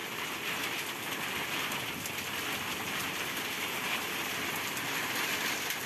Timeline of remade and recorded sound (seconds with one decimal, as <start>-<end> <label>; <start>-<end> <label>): 0.0-3.0 recorded; 3.0-4.5 remade; 4.5-5.9 recorded